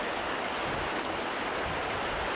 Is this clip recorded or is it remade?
recorded